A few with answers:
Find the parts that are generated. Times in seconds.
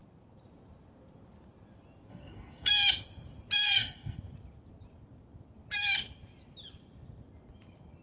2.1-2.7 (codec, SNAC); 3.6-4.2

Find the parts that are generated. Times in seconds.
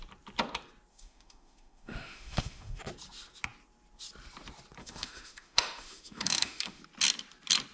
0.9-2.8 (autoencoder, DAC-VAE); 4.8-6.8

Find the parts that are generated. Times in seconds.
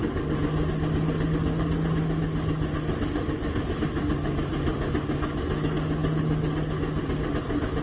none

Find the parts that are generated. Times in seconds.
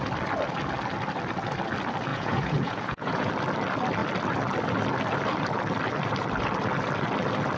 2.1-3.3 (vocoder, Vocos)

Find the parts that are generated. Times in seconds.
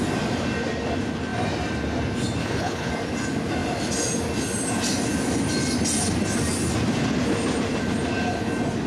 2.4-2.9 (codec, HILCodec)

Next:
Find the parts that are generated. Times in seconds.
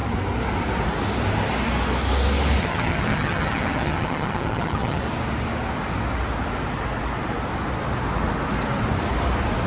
2.6-5.0 (vocoder, HiFi-GAN)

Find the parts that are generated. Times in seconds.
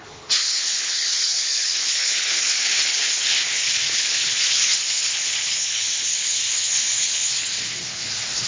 0.0-8.5 (codec, HILCodec)